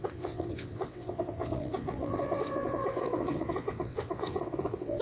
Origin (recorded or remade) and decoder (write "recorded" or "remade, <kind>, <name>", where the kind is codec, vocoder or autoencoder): remade, vocoder, WaveNeXt